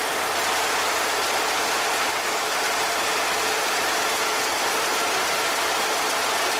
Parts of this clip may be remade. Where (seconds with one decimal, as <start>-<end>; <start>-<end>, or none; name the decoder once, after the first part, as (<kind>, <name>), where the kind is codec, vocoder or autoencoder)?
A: 2.1-2.6 (autoencoder, DAC-VAE)

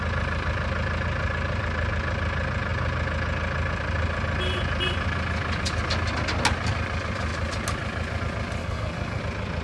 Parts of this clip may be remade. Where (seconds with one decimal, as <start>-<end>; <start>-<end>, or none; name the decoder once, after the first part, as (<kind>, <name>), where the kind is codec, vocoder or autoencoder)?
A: 8.6-9.2 (codec, SNAC)

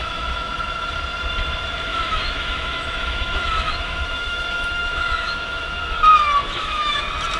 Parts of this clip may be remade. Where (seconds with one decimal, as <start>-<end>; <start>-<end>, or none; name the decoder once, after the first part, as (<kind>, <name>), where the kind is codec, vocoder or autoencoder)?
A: 0.0-0.5 (autoencoder, DAC-VAE); 1.9-5.8; 6.4-7.0

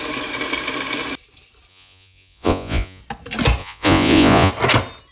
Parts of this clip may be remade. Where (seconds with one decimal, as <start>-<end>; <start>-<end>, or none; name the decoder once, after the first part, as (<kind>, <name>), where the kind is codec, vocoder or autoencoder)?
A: 1.7-3.0 (vocoder, Vocos); 3.6-4.5

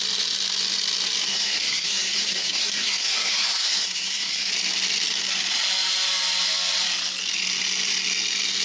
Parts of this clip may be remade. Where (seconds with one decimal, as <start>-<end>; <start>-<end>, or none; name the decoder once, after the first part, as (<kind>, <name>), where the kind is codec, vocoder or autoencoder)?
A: 1.3-4.5 (codec, SNAC)

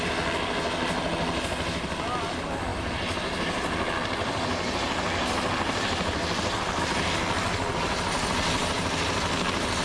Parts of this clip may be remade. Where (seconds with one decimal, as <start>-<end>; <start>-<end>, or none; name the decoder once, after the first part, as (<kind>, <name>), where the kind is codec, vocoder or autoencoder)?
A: none